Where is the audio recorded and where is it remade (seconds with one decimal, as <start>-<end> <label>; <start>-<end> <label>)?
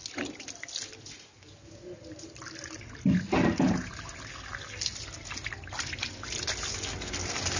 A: 0.0-7.6 recorded